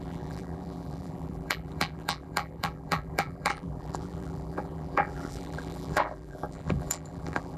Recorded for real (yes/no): no